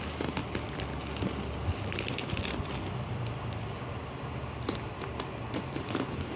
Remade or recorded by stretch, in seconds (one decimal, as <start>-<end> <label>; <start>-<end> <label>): 0.0-0.4 recorded; 0.4-4.2 remade; 4.2-6.4 recorded